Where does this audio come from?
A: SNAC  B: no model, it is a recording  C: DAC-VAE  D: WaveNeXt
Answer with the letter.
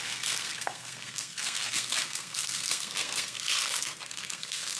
A